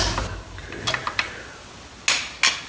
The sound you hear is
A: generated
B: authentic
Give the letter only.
B